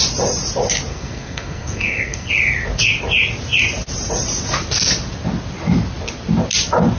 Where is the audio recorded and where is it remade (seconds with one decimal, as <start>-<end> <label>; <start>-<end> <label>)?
0.0-0.9 recorded; 0.9-2.3 remade; 2.3-7.0 recorded